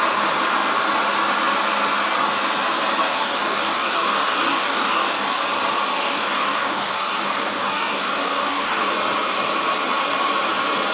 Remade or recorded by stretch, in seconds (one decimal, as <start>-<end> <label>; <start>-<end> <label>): 0.0-3.0 recorded; 3.0-5.4 remade; 5.4-6.0 recorded; 6.0-8.9 remade; 8.9-10.9 recorded